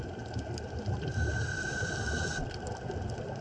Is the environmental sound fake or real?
real